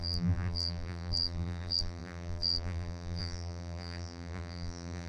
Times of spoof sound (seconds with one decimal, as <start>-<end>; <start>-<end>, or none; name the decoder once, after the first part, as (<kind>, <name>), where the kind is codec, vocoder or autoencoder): 0.0-5.1 (vocoder, BigVGAN v2)